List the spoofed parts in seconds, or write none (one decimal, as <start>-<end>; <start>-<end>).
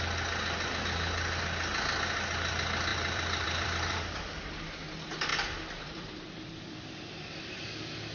2.9-4.4; 5.3-7.6